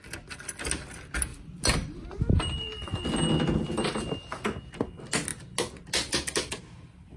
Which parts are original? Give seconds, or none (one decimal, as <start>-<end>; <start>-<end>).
0.0-7.2

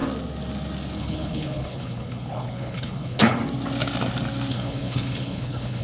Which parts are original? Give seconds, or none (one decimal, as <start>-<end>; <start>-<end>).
0.0-1.0; 3.4-4.5

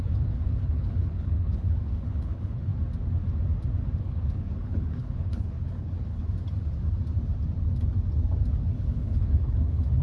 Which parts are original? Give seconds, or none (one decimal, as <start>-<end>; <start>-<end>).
2.7-4.0; 6.2-8.7

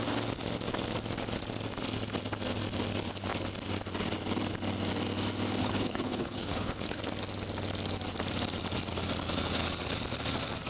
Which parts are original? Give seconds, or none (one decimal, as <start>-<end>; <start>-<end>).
0.0-5.6; 7.0-10.7

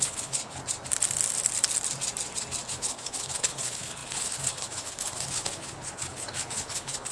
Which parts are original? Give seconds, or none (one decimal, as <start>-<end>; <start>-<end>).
0.6-2.7

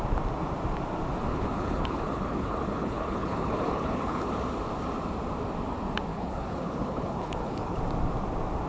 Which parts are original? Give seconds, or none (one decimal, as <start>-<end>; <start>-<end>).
0.0-1.3; 4.3-6.1; 7.8-8.7